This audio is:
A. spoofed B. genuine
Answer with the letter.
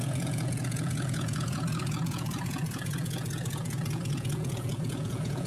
A